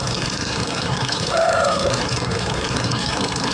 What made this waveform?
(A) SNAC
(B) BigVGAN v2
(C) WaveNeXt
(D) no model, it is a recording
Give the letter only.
A